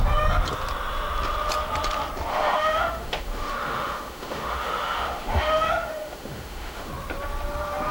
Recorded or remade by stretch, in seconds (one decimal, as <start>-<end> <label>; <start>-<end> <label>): 0.0-2.3 recorded; 2.3-6.9 remade; 6.9-7.9 recorded